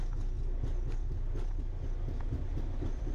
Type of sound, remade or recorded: recorded